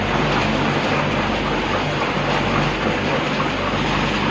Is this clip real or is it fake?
real